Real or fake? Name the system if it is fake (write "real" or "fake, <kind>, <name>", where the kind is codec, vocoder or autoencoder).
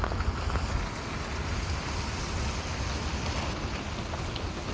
real